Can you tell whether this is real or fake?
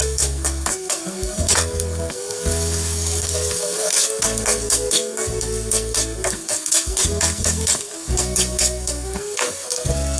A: fake